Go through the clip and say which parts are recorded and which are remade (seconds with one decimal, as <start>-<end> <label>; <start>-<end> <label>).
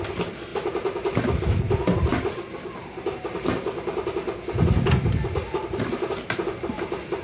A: 0.0-0.5 recorded; 0.5-1.4 remade; 1.4-7.2 recorded